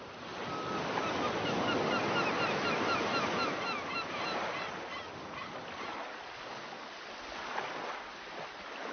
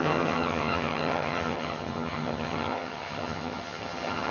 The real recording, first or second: first